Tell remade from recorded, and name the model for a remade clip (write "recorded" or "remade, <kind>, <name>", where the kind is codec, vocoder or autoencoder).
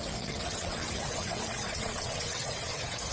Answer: remade, vocoder, WaveNeXt